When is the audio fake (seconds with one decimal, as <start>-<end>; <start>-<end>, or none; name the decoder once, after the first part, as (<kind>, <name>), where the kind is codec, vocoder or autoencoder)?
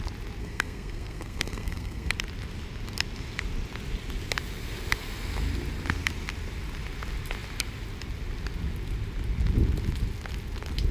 0.4-2.1 (codec, SNAC)